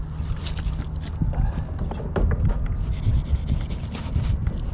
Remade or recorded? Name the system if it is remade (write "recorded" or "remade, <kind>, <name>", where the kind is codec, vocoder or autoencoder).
recorded